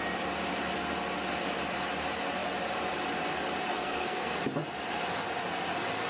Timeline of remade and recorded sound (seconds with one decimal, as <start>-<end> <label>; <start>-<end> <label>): 0.0-3.7 recorded; 3.7-4.3 remade; 4.3-6.1 recorded

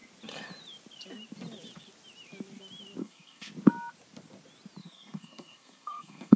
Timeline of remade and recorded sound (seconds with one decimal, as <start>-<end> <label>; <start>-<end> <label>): 0.0-3.0 recorded; 3.0-3.5 remade; 3.5-4.8 recorded; 4.8-6.4 remade

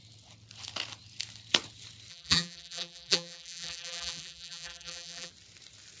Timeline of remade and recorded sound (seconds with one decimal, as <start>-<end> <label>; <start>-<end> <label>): 0.0-2.1 recorded; 2.1-5.3 remade; 5.3-6.0 recorded

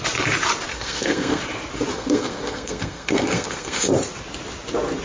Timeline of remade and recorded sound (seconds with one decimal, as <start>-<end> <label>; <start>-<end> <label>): 0.0-0.7 recorded; 0.7-1.4 remade; 1.4-1.9 recorded; 1.9-3.9 remade; 3.9-5.0 recorded

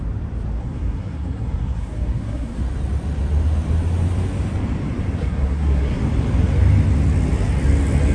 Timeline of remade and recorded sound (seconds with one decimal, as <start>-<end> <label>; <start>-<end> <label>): 0.0-0.6 recorded; 0.6-2.6 remade; 2.6-5.2 recorded; 5.2-6.0 remade; 6.0-8.1 recorded

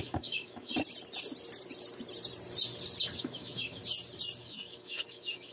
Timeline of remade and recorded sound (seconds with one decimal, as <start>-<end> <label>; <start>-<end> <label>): 0.0-0.7 remade; 0.7-3.2 recorded; 3.2-3.8 remade; 3.8-4.4 recorded; 4.4-5.5 remade

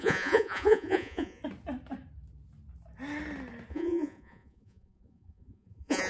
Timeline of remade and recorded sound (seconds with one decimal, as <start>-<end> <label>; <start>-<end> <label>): 0.0-1.4 remade; 1.4-3.7 recorded; 3.7-6.1 remade

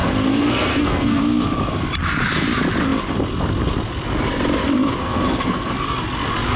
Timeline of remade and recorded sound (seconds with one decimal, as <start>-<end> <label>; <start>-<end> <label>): 0.0-1.2 remade; 1.2-5.0 recorded; 5.0-5.7 remade; 5.7-6.6 recorded